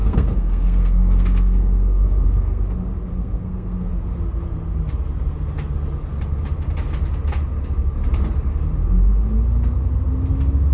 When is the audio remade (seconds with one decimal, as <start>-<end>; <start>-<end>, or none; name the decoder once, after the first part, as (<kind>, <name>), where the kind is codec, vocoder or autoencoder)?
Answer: 0.0-2.6 (codec, SNAC); 3.1-3.9

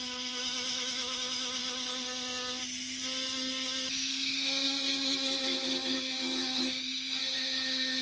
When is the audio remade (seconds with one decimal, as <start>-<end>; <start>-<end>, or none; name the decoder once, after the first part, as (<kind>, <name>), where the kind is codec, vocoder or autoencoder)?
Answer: 0.0-1.6 (autoencoder, DAC-VAE); 3.9-8.0

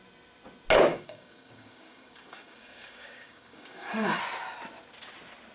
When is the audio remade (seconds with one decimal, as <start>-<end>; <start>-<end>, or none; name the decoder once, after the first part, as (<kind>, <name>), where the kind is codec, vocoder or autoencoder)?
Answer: 0.9-4.2 (codec, DAC)

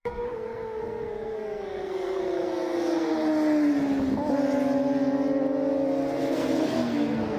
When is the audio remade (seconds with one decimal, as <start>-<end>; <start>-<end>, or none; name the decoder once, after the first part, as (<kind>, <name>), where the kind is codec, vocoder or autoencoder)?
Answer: 0.0-3.1 (codec, SNAC); 6.2-7.4